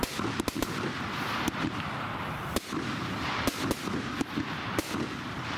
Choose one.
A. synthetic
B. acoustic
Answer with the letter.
B